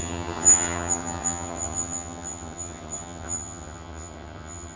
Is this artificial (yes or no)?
yes